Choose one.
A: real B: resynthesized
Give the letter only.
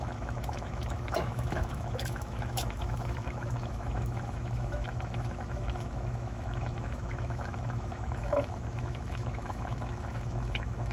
B